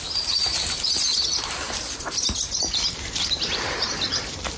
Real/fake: real